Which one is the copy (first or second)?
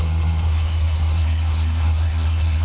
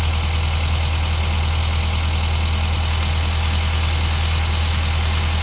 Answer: first